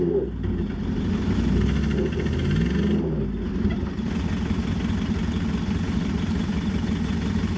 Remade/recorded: recorded